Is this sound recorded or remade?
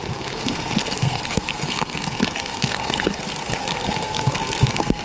remade